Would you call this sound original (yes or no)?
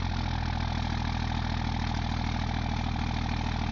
yes